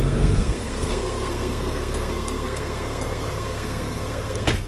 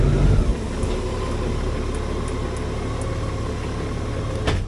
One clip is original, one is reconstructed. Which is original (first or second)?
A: second